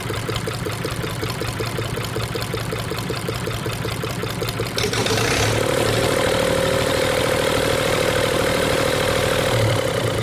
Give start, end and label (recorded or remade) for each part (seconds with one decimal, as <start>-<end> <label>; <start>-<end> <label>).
0.0-4.2 remade; 4.2-7.2 recorded; 7.2-10.2 remade